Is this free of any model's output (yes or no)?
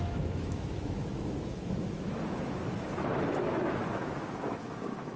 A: no